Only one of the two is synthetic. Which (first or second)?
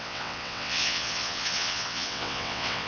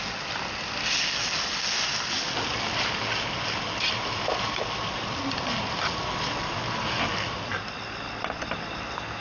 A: first